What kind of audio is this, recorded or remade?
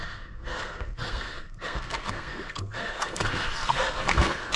remade